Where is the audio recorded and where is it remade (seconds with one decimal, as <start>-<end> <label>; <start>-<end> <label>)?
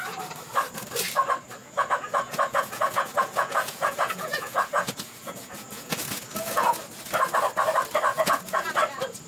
0.0-1.6 recorded; 1.6-6.8 remade; 6.8-8.1 recorded; 8.1-8.7 remade; 8.7-9.3 recorded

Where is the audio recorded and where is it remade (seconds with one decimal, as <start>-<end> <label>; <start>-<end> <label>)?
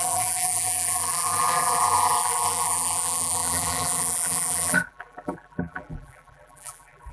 0.0-7.1 remade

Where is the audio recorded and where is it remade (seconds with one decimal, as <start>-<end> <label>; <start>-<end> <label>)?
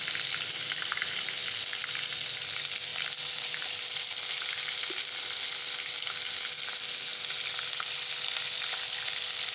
0.0-2.9 recorded; 2.9-3.8 remade; 3.8-9.5 recorded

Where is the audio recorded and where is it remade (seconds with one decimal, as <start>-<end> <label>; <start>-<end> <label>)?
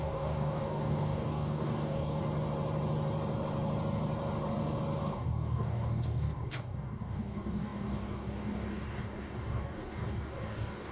0.0-2.2 remade; 2.2-5.0 recorded; 5.0-10.9 remade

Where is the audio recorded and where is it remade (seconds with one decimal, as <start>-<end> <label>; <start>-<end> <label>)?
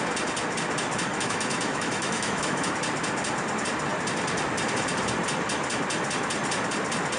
0.0-1.1 recorded; 1.1-2.7 remade; 2.7-7.2 recorded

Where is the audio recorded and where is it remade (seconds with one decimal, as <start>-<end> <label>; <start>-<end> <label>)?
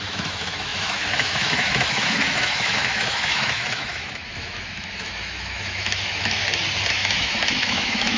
0.0-6.4 remade; 6.4-6.9 recorded; 6.9-8.2 remade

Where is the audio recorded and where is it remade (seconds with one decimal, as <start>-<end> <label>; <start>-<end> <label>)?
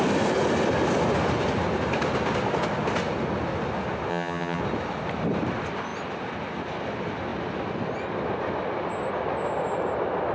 0.0-4.1 recorded; 4.1-4.6 remade; 4.6-10.3 recorded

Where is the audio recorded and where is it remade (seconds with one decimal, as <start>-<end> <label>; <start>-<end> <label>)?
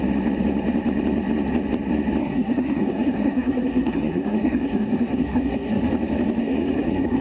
0.0-2.2 recorded; 2.2-5.8 remade; 5.8-6.4 recorded; 6.4-7.2 remade